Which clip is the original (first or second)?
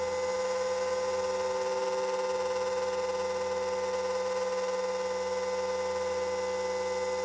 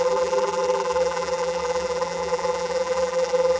first